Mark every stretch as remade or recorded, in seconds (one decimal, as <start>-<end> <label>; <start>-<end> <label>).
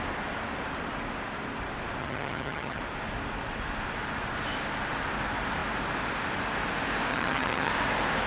0.0-2.0 recorded; 2.0-2.8 remade; 2.8-7.1 recorded; 7.1-7.7 remade; 7.7-8.3 recorded